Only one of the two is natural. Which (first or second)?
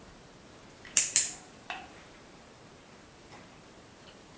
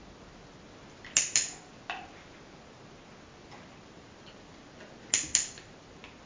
second